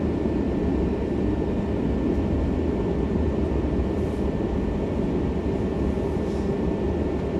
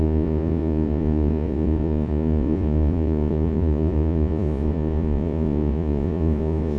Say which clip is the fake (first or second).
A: second